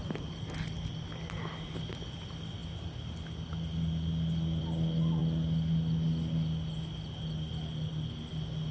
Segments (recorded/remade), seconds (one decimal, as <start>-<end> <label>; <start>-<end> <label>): 0.0-8.7 recorded